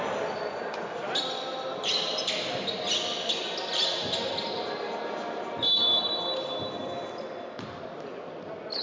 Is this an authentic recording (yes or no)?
yes